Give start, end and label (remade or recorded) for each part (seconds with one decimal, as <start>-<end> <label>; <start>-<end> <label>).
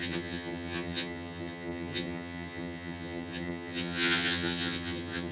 0.0-5.3 remade